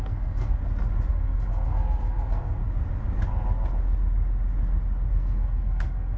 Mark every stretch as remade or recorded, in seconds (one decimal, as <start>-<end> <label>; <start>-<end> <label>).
0.0-0.6 remade; 0.6-1.1 recorded; 1.1-2.6 remade; 2.6-5.1 recorded; 5.1-6.2 remade